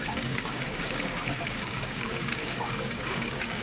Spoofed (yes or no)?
yes